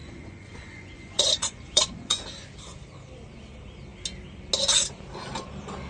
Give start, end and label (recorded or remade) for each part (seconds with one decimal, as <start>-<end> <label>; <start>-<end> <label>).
0.0-2.2 remade; 2.2-5.9 recorded